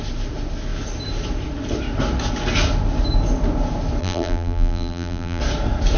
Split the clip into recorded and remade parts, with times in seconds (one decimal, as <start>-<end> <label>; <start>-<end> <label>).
0.0-4.0 recorded; 4.0-5.4 remade; 5.4-6.0 recorded